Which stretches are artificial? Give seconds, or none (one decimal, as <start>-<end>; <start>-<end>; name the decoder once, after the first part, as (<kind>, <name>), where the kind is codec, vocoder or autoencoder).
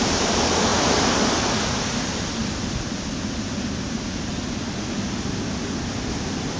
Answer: none